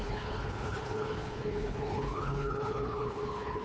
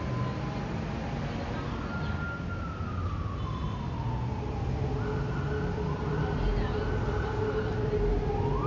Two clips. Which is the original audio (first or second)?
second